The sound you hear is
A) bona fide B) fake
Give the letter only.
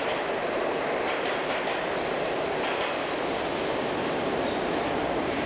A